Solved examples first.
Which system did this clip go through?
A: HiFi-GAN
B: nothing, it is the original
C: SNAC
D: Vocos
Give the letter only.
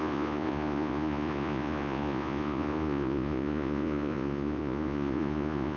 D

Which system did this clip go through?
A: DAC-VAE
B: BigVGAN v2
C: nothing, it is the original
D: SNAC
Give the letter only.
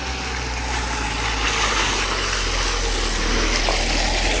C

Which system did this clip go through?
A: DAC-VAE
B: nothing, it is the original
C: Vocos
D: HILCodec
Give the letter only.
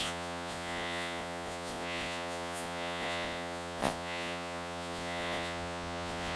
C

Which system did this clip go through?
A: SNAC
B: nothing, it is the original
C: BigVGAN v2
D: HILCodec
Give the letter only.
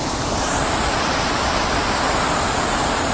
B